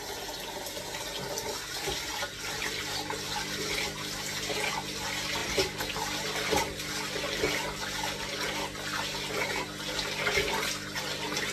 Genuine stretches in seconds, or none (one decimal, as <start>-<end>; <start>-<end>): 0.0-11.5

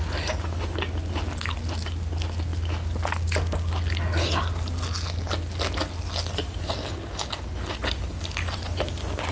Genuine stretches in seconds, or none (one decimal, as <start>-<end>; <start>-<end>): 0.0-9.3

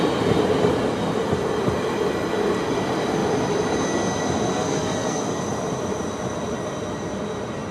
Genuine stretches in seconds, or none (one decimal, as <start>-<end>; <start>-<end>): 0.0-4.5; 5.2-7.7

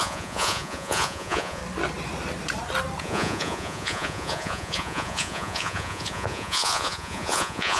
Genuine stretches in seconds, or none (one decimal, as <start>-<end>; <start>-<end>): 1.6-3.0